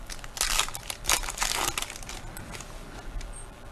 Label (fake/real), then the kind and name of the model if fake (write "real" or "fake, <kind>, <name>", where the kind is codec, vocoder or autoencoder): real